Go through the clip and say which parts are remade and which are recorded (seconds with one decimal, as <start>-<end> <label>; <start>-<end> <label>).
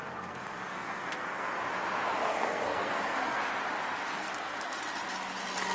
0.0-1.6 remade; 1.6-2.3 recorded; 2.3-3.4 remade; 3.4-4.1 recorded; 4.1-4.8 remade; 4.8-5.7 recorded